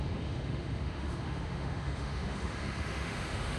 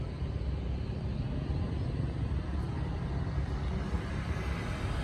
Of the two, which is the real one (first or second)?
second